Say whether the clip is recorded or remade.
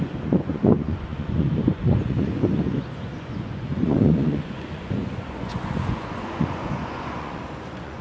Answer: remade